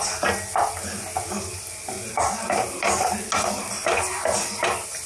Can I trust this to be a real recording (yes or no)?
yes